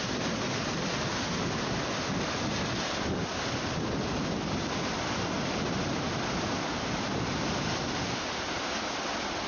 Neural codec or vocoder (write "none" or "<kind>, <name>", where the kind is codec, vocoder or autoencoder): none